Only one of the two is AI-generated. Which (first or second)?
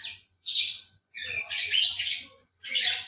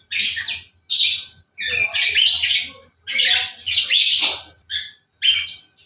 first